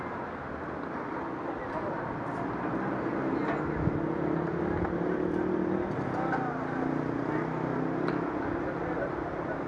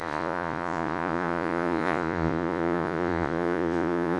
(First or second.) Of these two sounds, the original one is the first